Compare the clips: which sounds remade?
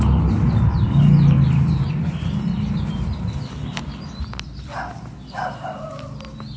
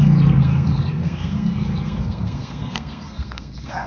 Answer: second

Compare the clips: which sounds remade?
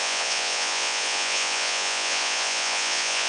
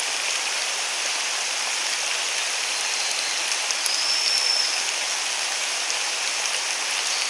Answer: first